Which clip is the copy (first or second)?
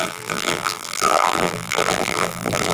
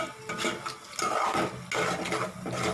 first